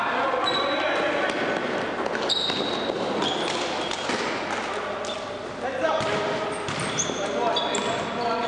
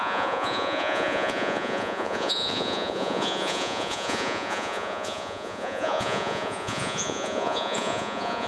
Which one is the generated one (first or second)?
second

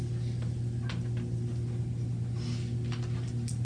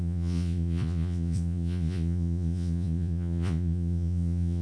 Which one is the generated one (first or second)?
second